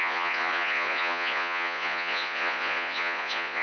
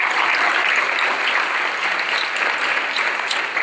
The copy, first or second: first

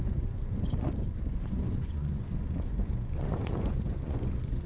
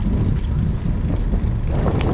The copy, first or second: first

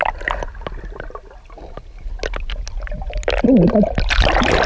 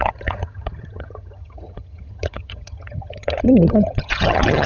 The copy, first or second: second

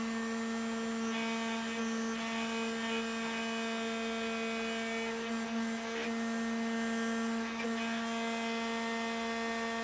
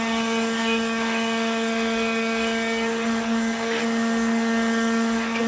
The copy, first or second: second